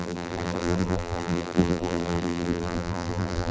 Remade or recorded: remade